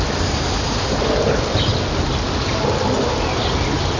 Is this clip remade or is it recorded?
recorded